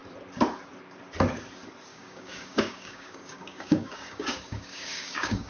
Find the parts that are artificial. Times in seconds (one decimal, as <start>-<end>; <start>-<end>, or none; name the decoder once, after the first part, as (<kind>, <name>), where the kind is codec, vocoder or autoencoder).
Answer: 1.9-5.5 (codec, DAC)